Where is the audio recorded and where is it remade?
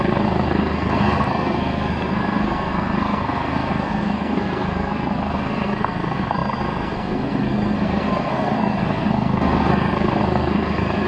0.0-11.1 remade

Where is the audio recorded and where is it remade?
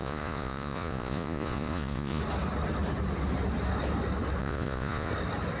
0.0-2.2 remade; 2.2-4.4 recorded; 4.4-5.1 remade; 5.1-5.6 recorded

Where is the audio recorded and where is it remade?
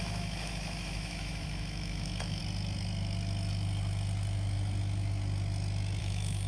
0.0-2.4 remade; 2.4-6.0 recorded; 6.0-6.5 remade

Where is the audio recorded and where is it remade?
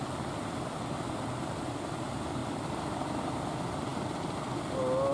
0.0-2.4 recorded; 2.4-3.4 remade; 3.4-5.1 recorded